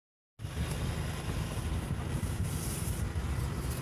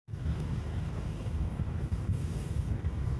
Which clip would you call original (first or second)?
first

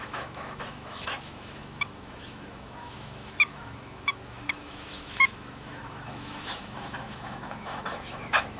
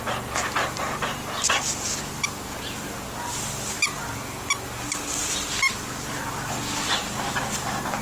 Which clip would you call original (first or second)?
second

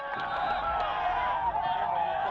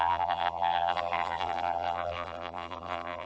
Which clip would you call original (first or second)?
first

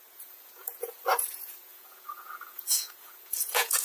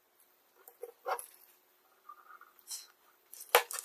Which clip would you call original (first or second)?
second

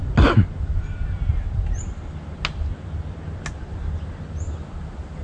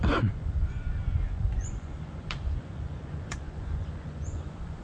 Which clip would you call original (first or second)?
first